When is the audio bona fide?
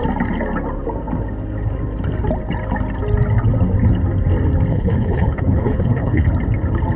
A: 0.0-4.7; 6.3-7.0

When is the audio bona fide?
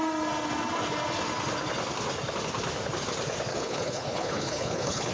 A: 0.0-3.5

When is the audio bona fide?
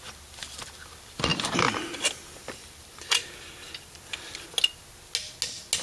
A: 0.0-5.8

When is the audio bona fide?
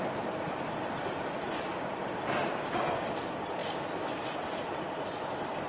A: 0.0-5.7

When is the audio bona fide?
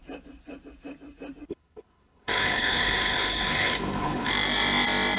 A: 0.0-1.5; 4.3-5.2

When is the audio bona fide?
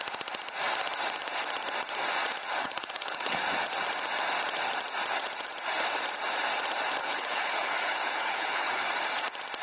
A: 0.0-2.5; 3.4-7.0; 8.8-9.6